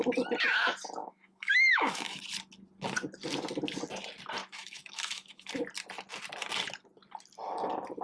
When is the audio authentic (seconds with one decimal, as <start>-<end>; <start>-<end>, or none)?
0.0-1.0; 2.2-4.4; 5.5-8.0